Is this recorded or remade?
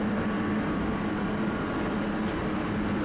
recorded